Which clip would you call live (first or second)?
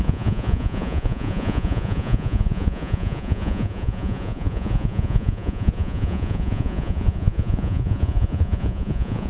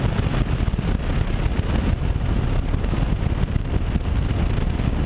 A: second